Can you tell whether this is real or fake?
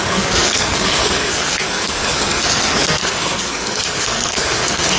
fake